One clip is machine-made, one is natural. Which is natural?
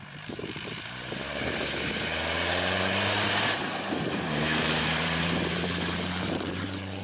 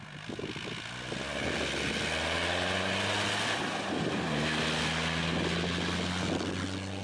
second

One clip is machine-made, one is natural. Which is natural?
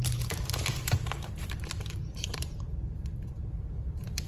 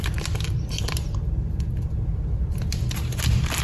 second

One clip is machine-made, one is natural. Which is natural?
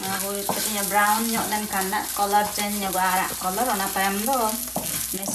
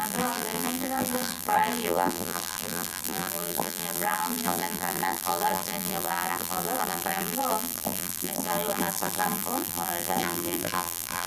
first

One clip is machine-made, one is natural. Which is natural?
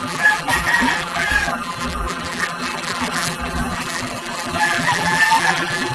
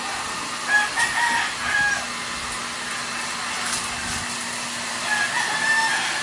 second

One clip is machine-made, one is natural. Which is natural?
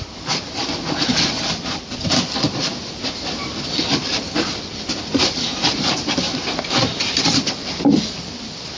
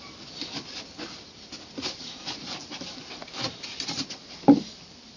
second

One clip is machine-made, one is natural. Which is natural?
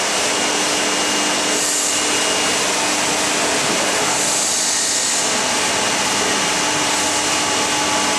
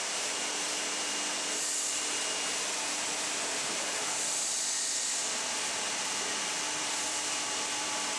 first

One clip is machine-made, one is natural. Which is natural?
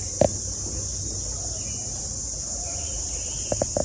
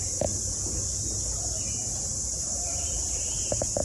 first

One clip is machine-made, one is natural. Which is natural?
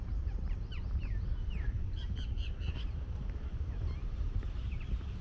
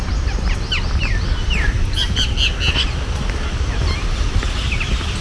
second